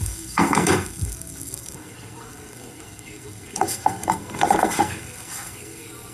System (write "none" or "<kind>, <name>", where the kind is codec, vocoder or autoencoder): codec, SNAC